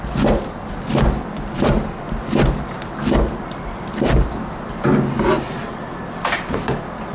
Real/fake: real